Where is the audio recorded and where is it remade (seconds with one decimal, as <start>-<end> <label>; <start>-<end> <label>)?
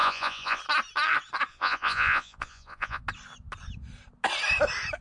0.0-0.6 remade; 0.6-1.5 recorded; 1.5-3.0 remade; 3.0-5.0 recorded